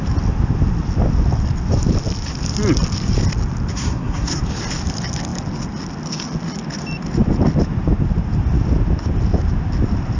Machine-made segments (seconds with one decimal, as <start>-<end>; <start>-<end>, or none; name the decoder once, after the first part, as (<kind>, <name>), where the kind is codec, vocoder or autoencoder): 3.7-4.4 (codec, SNAC)